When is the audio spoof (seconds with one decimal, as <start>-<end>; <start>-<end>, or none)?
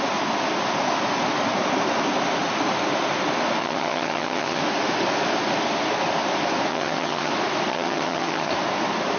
3.6-4.6; 6.7-7.3; 7.7-8.5